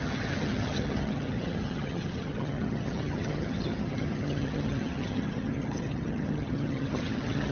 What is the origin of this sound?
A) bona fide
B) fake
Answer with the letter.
B